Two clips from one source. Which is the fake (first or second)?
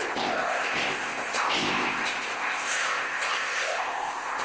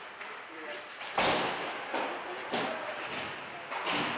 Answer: first